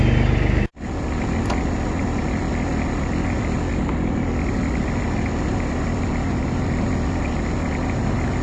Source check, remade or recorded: recorded